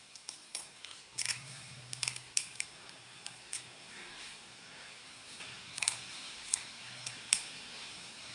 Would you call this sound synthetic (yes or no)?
yes